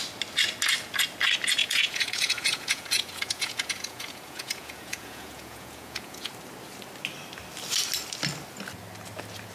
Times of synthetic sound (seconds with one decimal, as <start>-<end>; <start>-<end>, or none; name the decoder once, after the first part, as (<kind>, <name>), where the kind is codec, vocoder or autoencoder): 1.6-6.3 (vocoder, Vocos)